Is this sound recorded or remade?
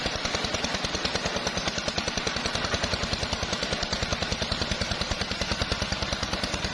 recorded